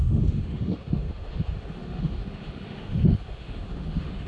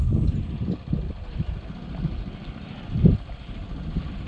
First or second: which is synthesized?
first